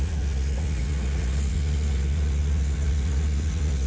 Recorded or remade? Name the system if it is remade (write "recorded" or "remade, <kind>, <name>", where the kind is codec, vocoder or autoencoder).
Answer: remade, vocoder, Vocos